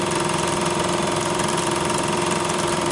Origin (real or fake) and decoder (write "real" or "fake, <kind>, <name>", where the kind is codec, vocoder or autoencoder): fake, vocoder, BigVGAN v2